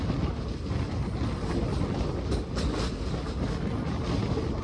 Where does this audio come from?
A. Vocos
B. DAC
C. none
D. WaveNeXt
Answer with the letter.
C